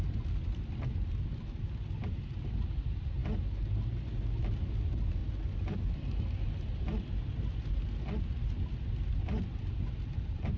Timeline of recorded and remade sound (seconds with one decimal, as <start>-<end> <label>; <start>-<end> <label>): 0.0-10.6 recorded